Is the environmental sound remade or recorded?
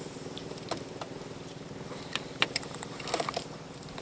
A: remade